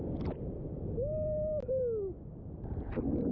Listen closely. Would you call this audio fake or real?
real